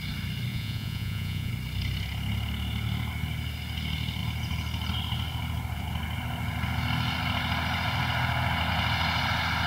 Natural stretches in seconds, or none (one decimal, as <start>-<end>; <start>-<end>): 0.0-0.5; 1.5-9.7